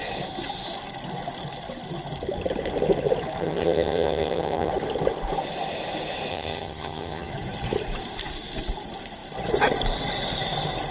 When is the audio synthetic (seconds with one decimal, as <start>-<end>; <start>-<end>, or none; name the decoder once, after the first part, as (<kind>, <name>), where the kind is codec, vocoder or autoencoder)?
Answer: 3.4-4.7 (vocoder, HiFi-GAN); 6.3-7.3